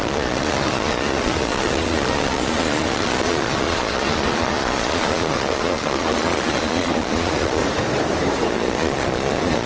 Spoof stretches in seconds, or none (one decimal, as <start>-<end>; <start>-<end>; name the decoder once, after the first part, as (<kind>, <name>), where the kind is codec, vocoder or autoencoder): 0.0-7.6 (vocoder, Vocos); 8.5-9.7